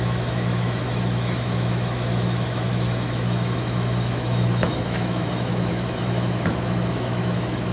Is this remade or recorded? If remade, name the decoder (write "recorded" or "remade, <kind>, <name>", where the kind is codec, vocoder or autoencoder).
remade, autoencoder, DAC-VAE